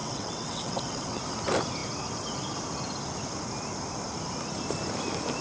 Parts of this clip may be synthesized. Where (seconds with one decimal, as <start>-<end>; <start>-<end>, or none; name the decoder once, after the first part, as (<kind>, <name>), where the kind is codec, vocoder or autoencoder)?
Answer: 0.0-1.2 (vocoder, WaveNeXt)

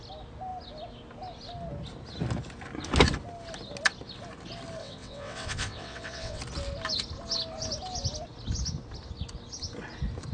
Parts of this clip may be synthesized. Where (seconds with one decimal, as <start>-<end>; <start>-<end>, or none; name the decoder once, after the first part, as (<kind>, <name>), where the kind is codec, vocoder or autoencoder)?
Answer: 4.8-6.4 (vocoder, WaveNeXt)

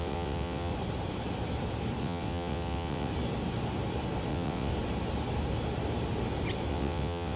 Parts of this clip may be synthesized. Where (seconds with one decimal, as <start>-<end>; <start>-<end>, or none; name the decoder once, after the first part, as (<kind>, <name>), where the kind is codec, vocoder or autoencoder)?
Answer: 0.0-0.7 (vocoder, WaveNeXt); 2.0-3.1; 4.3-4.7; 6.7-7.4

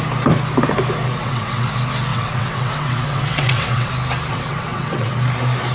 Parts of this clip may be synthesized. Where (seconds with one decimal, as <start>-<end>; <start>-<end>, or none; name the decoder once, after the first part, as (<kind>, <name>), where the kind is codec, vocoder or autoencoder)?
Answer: 1.2-1.7 (vocoder, WaveNeXt); 2.1-3.9; 4.3-5.1

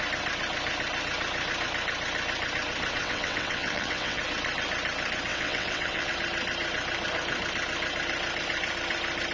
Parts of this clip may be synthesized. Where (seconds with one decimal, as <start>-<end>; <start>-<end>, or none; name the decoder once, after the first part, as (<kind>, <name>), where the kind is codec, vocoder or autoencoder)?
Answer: 3.0-4.2 (vocoder, WaveNeXt); 5.3-6.1